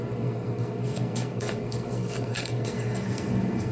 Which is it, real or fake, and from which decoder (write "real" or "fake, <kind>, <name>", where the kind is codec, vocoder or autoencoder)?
fake, codec, SNAC